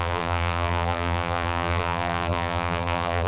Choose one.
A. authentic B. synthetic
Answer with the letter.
B